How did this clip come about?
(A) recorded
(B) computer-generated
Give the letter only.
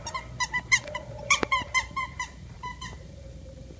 B